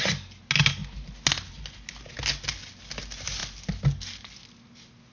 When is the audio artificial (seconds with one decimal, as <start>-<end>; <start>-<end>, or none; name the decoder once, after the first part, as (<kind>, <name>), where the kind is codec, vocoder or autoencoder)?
none

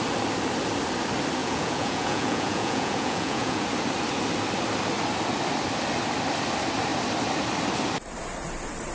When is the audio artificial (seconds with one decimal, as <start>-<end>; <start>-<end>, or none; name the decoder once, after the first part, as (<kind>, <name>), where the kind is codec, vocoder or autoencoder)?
1.4-3.6 (vocoder, Vocos)

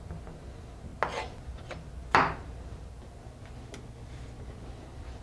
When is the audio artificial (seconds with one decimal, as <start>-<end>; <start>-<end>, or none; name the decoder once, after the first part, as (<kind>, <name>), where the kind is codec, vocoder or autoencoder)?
none

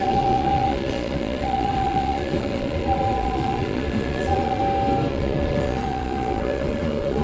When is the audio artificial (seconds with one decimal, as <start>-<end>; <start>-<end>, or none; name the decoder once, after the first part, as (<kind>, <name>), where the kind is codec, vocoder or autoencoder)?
0.0-4.6 (vocoder, Vocos); 5.1-7.2

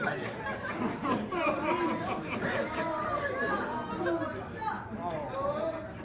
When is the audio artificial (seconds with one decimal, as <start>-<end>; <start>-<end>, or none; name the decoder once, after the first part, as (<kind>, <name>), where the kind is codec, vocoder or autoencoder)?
none

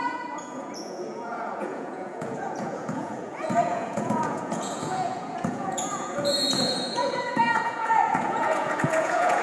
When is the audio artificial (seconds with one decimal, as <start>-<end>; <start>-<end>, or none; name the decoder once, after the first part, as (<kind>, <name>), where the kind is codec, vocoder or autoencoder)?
0.0-9.4 (vocoder, Vocos)

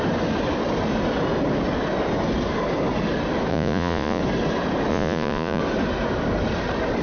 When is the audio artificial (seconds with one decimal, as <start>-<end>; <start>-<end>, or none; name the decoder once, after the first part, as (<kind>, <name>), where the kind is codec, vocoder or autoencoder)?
3.5-4.2 (vocoder, Vocos); 4.9-5.6

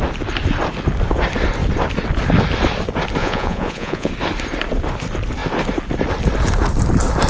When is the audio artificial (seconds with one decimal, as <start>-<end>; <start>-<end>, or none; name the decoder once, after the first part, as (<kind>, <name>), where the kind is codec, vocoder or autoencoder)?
3.2-4.1 (vocoder, Vocos)